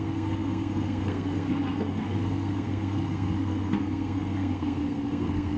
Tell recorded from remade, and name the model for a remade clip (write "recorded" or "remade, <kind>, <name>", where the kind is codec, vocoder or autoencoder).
remade, codec, SNAC